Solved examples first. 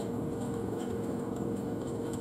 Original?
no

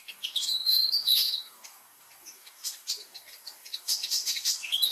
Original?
no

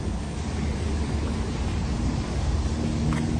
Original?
no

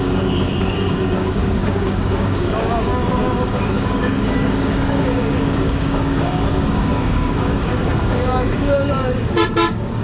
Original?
no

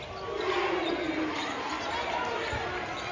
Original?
yes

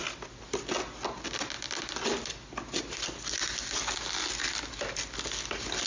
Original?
yes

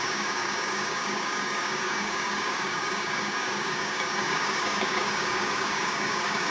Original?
no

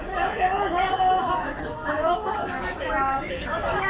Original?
no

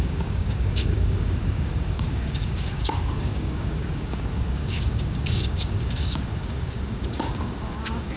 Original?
no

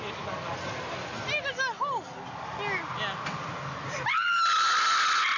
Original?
yes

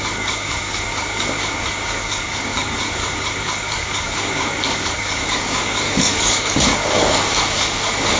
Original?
no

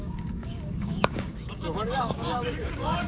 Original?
no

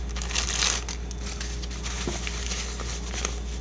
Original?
yes